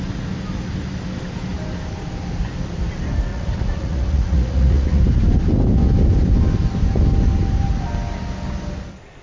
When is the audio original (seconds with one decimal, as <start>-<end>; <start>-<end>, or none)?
0.0-3.3; 5.0-9.2